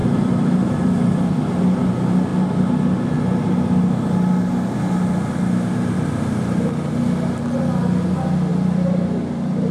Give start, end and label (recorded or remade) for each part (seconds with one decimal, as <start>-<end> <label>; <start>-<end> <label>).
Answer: 0.0-1.4 remade; 1.4-8.5 recorded; 8.5-9.7 remade